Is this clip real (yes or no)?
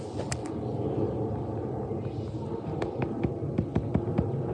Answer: yes